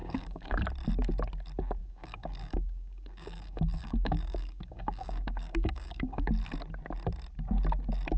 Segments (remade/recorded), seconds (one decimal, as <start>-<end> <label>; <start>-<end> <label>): 0.0-0.6 remade; 0.6-1.8 recorded; 1.8-6.3 remade; 6.3-8.2 recorded